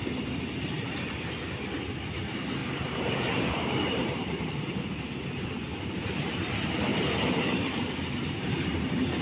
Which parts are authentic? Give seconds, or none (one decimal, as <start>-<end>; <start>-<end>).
0.0-2.6; 5.2-6.9